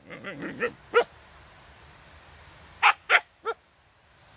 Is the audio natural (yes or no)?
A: yes